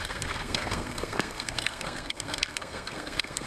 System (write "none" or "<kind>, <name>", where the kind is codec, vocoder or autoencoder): codec, SNAC